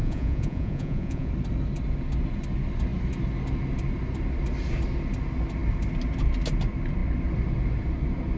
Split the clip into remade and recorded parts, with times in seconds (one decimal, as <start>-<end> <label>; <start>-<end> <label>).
0.0-1.3 remade; 1.3-8.4 recorded